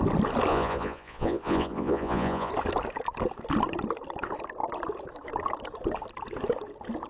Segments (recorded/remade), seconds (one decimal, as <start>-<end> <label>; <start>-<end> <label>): 0.0-0.5 recorded; 0.5-2.5 remade; 2.5-7.1 recorded